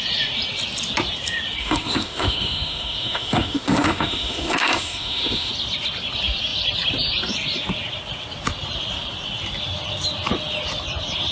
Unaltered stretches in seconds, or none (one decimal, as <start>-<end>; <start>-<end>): 0.0-1.6; 5.5-11.3

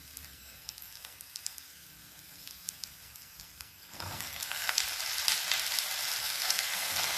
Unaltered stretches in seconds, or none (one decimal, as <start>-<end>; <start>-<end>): 4.8-6.2

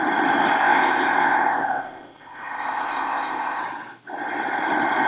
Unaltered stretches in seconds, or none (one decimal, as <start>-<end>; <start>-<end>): 0.0-0.6; 3.6-5.1

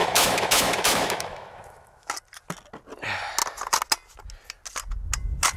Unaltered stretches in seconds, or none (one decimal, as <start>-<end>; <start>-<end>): 2.1-5.6

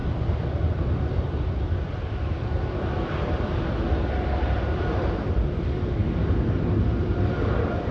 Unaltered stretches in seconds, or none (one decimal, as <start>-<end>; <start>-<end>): 6.0-6.5